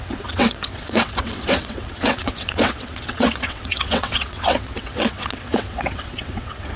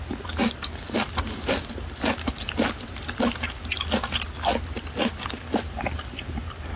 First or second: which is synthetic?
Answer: first